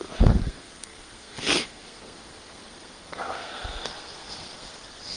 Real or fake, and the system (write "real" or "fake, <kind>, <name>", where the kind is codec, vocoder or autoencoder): fake, codec, SNAC